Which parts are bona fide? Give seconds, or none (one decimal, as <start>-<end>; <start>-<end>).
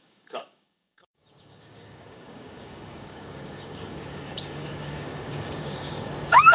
none